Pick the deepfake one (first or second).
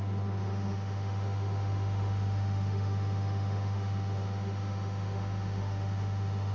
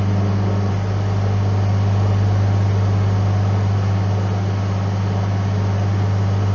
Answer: first